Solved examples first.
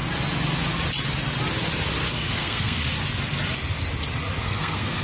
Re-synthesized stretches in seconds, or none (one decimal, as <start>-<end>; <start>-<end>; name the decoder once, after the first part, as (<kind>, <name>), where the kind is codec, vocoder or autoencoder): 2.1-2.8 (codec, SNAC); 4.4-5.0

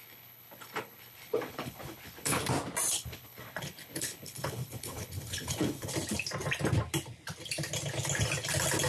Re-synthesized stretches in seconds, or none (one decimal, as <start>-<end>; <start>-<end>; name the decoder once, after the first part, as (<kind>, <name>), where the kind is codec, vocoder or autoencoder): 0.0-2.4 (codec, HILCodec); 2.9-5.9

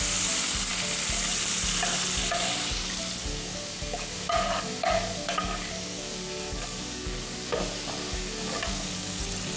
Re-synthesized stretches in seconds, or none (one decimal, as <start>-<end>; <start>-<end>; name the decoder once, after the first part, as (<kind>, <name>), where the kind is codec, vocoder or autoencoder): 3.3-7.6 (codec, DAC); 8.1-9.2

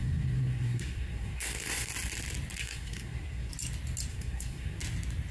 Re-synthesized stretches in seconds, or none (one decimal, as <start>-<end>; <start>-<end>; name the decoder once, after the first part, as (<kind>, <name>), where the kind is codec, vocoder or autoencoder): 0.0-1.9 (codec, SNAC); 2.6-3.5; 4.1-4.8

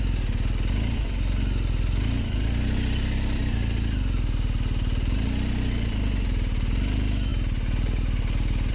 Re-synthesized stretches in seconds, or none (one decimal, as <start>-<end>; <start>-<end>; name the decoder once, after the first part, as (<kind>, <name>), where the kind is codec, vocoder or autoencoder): none